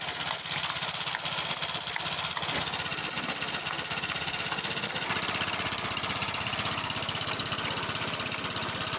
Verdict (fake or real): real